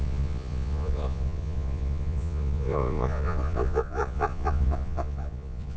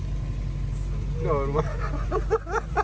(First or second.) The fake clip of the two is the first